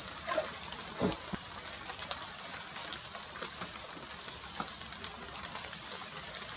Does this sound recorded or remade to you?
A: recorded